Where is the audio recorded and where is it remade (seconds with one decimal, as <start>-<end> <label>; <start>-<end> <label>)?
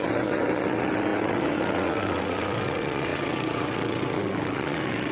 0.0-5.1 remade